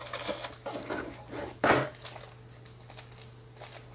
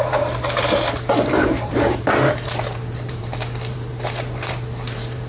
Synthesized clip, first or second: second